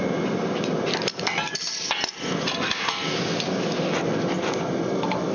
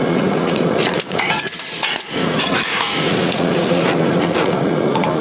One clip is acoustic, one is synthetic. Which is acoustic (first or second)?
first